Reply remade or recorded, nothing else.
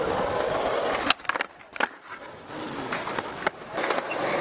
recorded